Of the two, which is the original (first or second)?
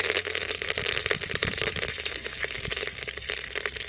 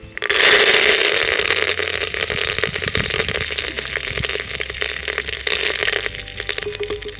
second